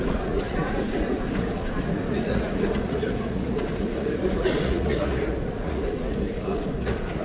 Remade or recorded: remade